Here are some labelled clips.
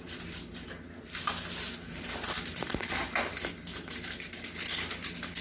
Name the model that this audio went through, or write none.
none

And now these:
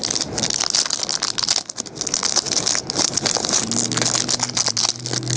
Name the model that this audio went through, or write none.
none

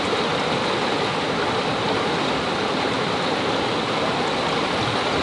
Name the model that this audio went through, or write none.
none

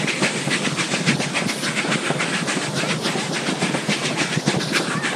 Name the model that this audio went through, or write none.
none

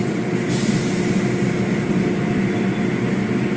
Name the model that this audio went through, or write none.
none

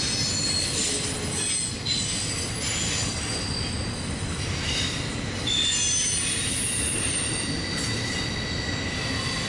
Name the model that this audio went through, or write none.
none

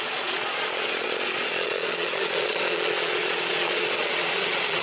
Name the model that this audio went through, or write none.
vocoder, Vocos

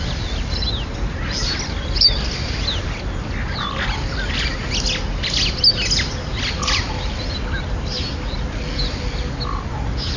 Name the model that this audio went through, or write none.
none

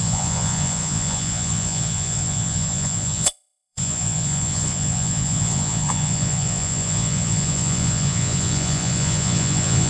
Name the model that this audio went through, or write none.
vocoder, Vocos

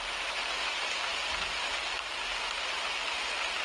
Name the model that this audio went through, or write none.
none